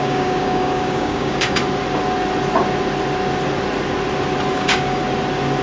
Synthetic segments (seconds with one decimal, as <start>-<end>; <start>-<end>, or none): 0.0-1.6; 4.5-5.0